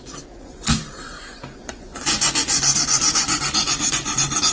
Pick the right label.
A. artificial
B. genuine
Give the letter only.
A